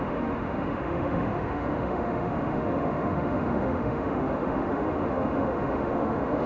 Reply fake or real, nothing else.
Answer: fake